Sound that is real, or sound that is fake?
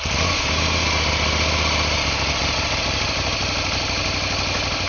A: real